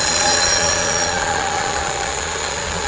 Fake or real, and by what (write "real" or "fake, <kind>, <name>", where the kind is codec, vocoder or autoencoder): fake, vocoder, Vocos